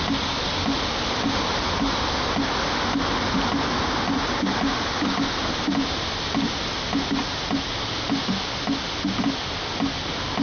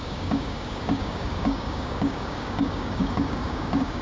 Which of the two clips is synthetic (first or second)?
second